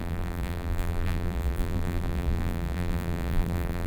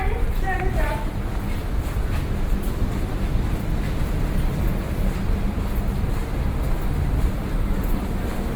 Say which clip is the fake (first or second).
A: first